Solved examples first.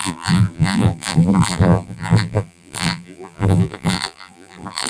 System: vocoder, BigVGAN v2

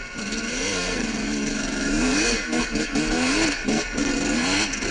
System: codec, SNAC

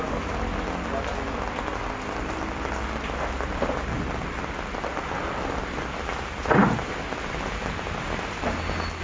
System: none